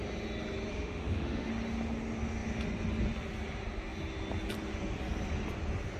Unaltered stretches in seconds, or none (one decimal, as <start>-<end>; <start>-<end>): 0.0-0.7; 1.5-6.0